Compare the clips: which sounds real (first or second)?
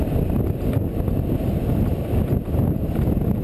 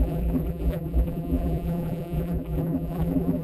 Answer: first